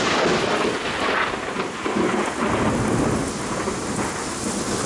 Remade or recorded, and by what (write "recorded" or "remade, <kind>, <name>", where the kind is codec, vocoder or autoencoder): recorded